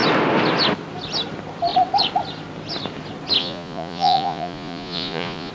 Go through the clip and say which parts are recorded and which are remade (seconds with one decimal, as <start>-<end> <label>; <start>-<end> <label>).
0.0-3.4 recorded; 3.4-5.5 remade